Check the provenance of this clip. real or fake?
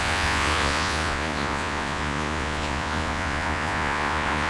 fake